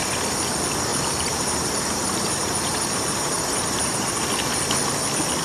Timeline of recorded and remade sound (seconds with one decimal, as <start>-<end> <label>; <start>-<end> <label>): 0.0-0.9 recorded; 0.9-4.1 remade; 4.1-5.4 recorded